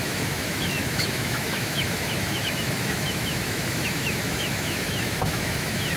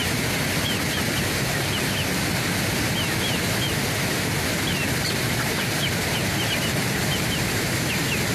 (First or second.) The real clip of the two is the second